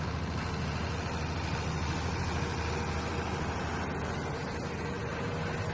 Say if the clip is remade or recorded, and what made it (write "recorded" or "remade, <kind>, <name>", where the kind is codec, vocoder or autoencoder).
recorded